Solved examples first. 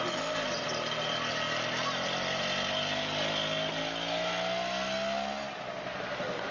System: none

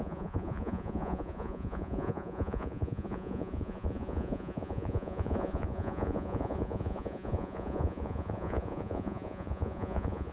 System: vocoder, Vocos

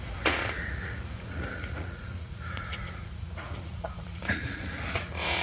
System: vocoder, Vocos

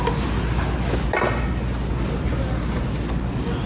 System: none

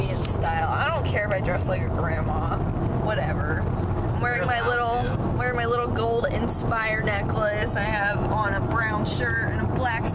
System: none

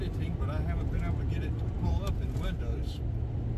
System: none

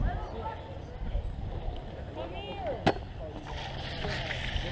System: none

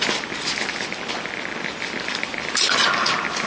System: none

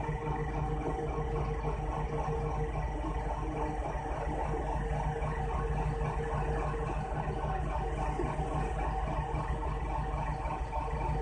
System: none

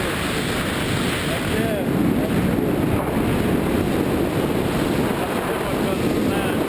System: none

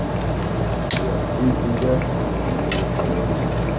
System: none